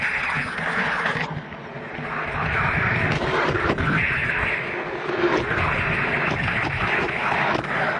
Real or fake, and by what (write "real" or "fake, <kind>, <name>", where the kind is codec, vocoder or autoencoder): real